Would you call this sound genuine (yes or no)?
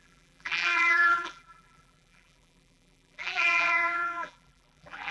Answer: no